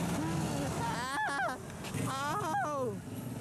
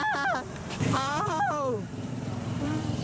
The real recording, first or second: first